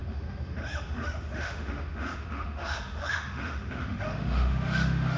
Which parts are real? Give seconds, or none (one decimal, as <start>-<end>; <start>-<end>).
none